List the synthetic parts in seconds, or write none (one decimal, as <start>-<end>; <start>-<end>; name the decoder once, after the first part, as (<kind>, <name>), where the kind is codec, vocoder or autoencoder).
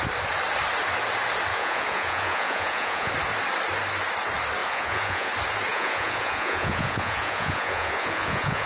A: 1.5-3.1 (vocoder, Vocos); 4.6-5.3; 5.7-8.7